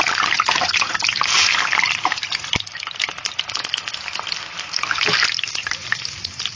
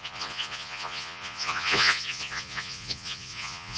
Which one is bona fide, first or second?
first